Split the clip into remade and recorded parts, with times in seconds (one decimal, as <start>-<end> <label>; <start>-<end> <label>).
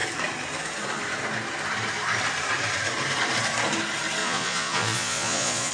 0.0-4.2 recorded; 4.2-5.7 remade